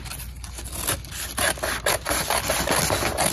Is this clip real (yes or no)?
yes